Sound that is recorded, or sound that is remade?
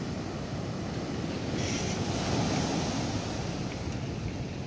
recorded